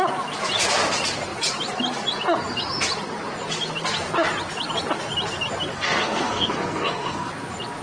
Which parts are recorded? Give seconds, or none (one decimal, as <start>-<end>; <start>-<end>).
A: 0.0-5.7; 7.3-7.8